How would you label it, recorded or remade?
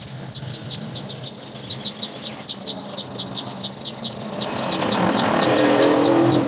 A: recorded